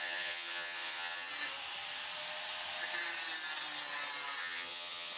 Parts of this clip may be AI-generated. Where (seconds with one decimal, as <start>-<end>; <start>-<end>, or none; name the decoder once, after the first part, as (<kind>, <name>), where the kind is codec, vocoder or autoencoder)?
0.0-1.3 (vocoder, HiFi-GAN); 4.4-5.2